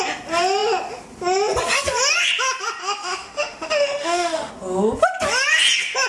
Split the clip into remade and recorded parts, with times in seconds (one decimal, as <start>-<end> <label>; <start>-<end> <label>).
0.0-2.8 recorded; 2.8-4.5 remade; 4.5-6.1 recorded